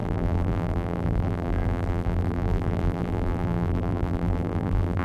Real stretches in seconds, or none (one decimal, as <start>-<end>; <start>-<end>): none